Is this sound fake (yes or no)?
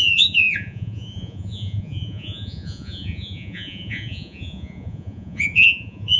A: yes